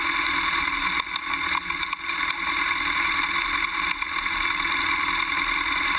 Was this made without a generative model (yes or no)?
yes